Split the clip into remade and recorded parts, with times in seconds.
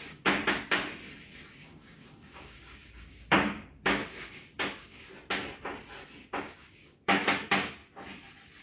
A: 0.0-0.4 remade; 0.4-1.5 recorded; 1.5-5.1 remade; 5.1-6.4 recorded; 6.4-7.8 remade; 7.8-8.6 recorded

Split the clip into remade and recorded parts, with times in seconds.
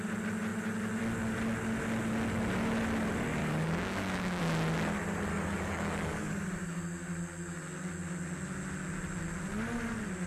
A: 0.0-3.4 recorded; 3.4-4.4 remade; 4.4-5.3 recorded; 5.3-6.4 remade; 6.4-10.3 recorded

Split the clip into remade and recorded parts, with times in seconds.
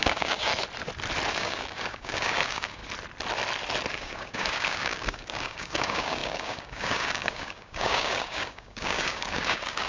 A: 0.0-0.5 remade; 0.5-1.3 recorded; 1.3-2.8 remade; 2.8-3.9 recorded; 3.9-9.9 remade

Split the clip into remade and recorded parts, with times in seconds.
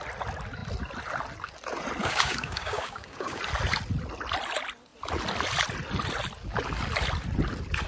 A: 0.0-2.0 recorded; 2.0-3.4 remade; 3.4-7.9 recorded